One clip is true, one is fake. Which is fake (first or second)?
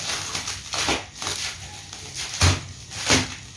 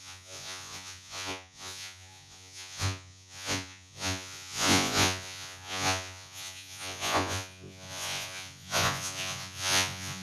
second